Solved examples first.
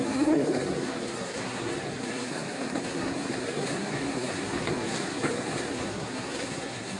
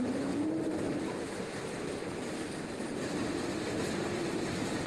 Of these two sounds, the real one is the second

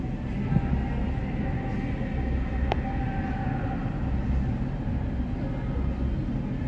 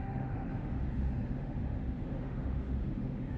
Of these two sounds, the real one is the first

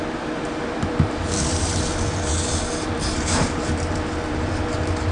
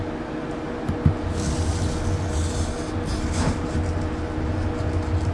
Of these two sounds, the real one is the second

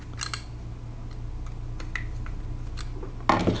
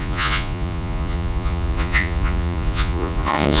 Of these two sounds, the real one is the first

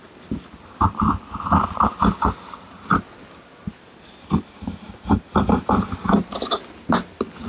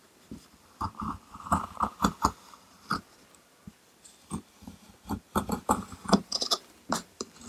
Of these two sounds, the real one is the first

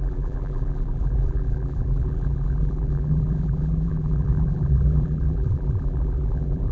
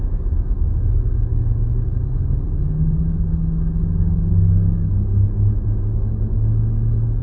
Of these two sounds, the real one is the second